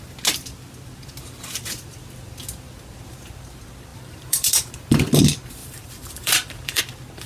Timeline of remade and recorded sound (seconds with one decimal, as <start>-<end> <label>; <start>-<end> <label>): 0.0-3.9 recorded; 3.9-4.7 remade; 4.7-5.6 recorded; 5.6-6.8 remade; 6.8-7.3 recorded